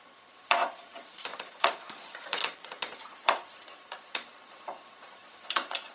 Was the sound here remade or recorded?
remade